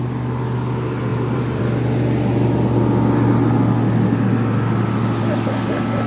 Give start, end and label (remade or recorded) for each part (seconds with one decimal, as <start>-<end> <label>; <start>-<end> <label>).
0.0-1.1 recorded; 1.1-1.6 remade; 1.6-6.1 recorded